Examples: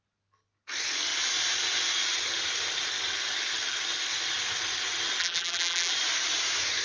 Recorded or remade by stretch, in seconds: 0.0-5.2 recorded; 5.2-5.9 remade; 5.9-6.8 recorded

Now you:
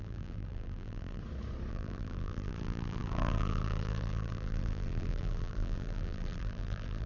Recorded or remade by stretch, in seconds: 0.0-1.2 remade; 1.2-1.7 recorded; 1.7-7.1 remade

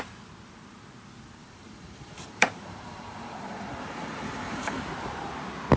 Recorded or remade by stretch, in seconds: 0.0-1.4 recorded; 1.4-4.9 remade; 4.9-5.8 recorded

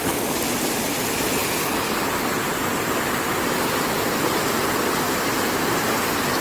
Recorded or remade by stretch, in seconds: 0.0-6.4 recorded

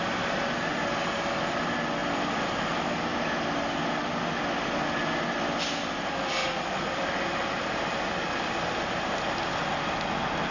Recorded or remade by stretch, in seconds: 0.0-2.0 recorded; 2.0-2.6 remade; 2.6-6.4 recorded; 6.4-7.2 remade; 7.2-10.5 recorded

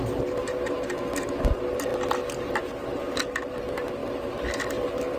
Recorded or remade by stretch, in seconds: 0.0-5.2 recorded

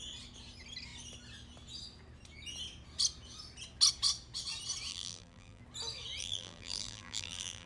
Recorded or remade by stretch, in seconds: 0.0-4.9 recorded; 4.9-5.6 remade; 5.6-6.2 recorded; 6.2-7.7 remade